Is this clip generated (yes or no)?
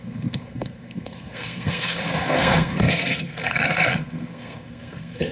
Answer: yes